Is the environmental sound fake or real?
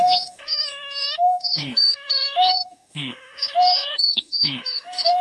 fake